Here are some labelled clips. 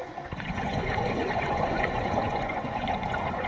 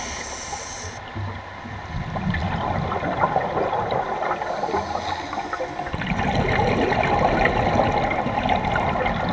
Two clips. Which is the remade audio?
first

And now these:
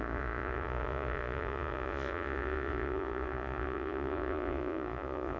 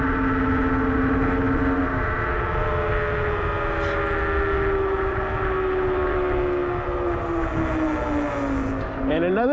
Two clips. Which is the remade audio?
first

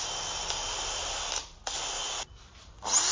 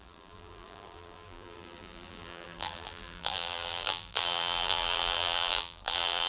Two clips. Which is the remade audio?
second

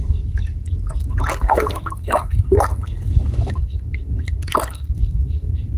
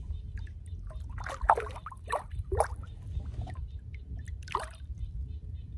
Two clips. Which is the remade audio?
first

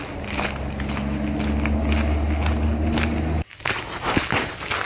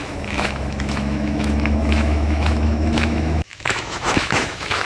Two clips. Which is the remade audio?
second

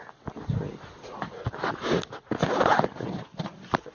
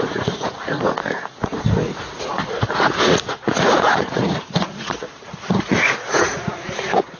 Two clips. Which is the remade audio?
second